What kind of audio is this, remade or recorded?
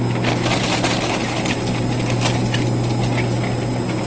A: recorded